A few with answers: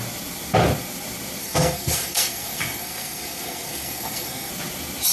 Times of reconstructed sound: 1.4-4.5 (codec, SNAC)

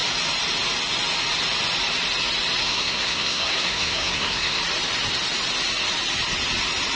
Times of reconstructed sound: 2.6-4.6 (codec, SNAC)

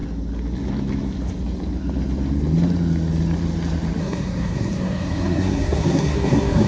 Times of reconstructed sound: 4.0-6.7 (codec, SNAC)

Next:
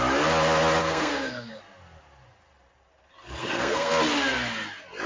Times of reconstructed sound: 0.8-1.6 (codec, SNAC); 3.4-3.9

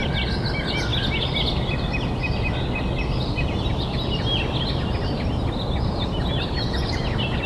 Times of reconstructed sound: none

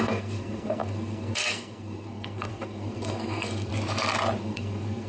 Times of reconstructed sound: 0.0-3.7 (codec, SNAC); 4.4-5.1

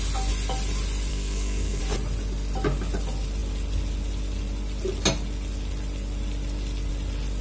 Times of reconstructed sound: 1.1-1.8 (codec, SNAC)